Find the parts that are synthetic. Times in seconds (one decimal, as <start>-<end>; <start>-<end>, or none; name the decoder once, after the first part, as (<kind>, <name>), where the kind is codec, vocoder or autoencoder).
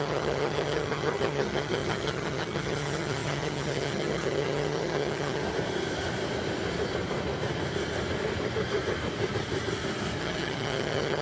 0.0-5.4 (vocoder, HiFi-GAN); 10.2-11.2